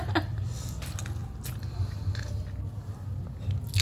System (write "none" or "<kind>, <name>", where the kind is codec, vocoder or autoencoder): none